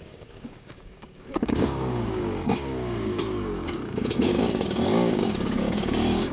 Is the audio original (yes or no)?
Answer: no